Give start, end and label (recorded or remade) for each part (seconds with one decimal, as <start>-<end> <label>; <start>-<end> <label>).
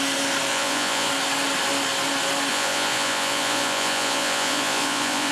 0.0-0.5 recorded; 0.5-1.1 remade; 1.1-2.5 recorded; 2.5-5.3 remade